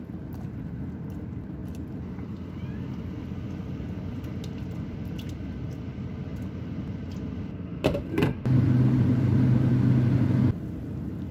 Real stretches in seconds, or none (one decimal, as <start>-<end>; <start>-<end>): 0.0-6.3; 6.8-7.7; 8.8-11.3